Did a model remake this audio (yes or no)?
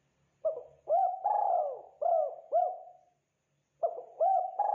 no